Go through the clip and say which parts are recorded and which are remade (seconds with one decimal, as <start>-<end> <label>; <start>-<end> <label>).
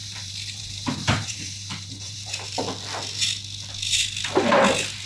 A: 0.0-2.6 remade; 2.6-5.1 recorded